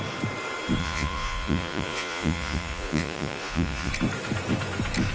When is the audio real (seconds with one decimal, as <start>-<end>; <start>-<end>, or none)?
0.0-0.8; 3.9-5.1